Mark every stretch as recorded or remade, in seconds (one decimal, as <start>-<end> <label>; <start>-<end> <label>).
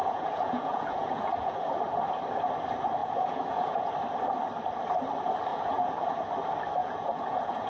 0.0-1.8 remade; 1.8-3.0 recorded; 3.0-3.9 remade; 3.9-5.5 recorded; 5.5-6.3 remade; 6.3-6.8 recorded; 6.8-7.7 remade